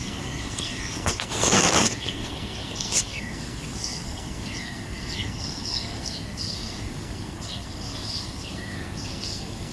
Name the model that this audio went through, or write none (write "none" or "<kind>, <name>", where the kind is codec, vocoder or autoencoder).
codec, SNAC